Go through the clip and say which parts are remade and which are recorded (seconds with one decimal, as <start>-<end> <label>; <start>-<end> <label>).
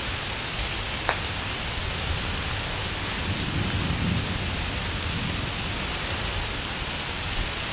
0.0-7.7 recorded